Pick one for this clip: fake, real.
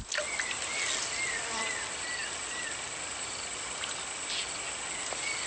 real